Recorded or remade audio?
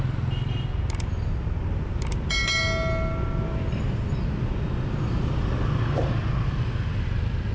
recorded